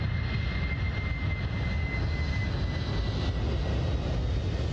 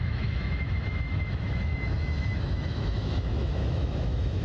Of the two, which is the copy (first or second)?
second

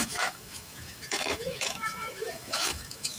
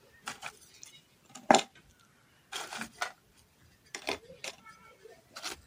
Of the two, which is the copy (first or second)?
first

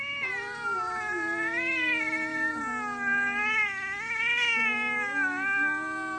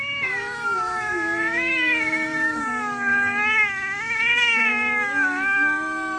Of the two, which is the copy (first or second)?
second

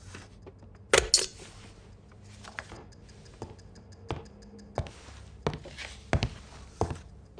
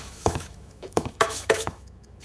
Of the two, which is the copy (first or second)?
second